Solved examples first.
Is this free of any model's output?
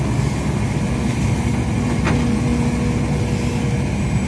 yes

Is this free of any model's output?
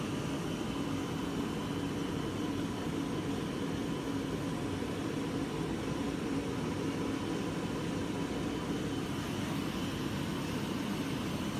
yes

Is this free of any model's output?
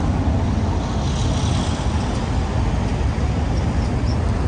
yes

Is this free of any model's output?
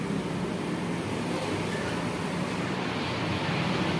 yes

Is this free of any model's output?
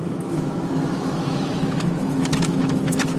no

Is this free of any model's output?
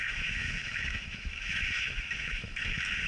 no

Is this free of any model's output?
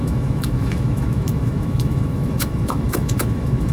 no